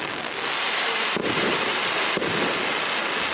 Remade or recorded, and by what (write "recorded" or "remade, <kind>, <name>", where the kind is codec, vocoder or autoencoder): recorded